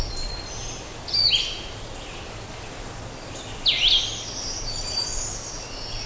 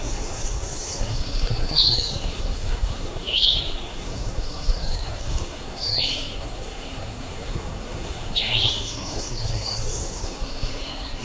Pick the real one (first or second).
first